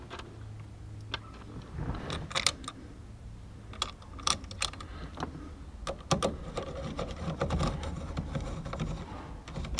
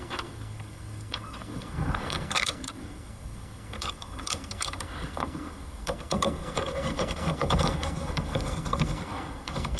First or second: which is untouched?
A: first